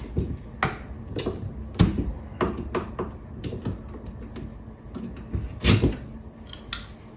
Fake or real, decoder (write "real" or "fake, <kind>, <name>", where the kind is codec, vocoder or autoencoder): real